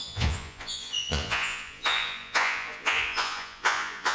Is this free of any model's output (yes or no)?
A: no